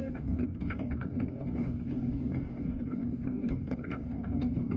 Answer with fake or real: fake